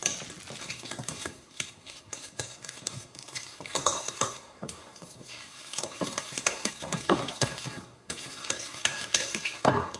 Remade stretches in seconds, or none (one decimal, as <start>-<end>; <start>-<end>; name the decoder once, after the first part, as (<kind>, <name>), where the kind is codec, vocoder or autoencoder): 0.6-10.0 (codec, SNAC)